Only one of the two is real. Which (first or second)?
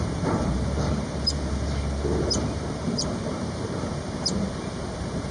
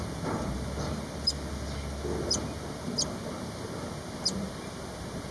second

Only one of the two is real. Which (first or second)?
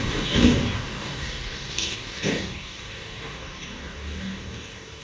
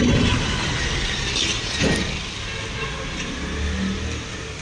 second